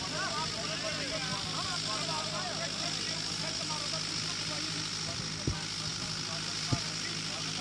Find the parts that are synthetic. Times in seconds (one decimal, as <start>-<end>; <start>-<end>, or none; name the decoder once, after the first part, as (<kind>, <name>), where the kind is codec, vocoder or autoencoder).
none